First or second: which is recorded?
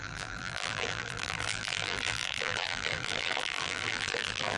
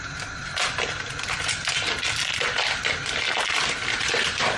second